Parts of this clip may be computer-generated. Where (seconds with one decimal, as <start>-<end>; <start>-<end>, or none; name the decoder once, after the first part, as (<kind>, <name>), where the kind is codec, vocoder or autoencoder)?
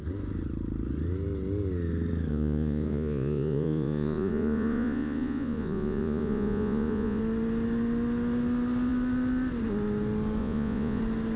2.3-7.2 (vocoder, Vocos); 10.4-11.0